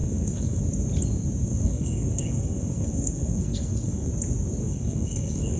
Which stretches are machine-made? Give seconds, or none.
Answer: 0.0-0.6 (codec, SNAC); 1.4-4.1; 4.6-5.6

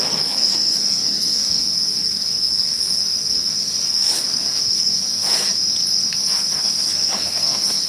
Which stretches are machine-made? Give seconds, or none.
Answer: 0.0-5.6 (codec, SNAC); 6.1-7.9

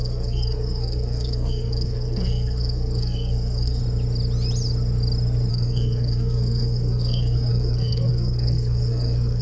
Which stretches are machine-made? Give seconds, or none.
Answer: 0.0-3.8 (codec, SNAC); 5.5-9.4

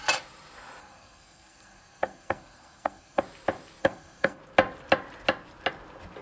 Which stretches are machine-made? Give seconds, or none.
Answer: 0.8-3.2 (codec, SNAC); 3.8-4.4

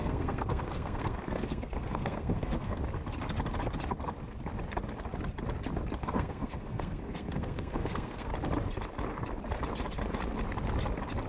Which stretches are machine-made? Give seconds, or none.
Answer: 0.0-2.8 (codec, SNAC); 6.0-8.3